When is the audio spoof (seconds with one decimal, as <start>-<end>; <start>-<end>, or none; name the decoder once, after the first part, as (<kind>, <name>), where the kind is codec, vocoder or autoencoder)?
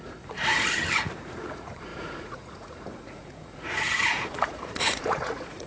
0.0-0.5 (vocoder, Vocos); 1.2-5.7